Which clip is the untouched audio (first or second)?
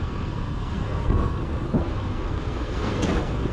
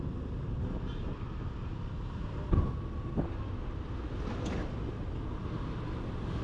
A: second